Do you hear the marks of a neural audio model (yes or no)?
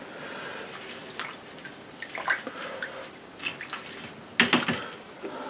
no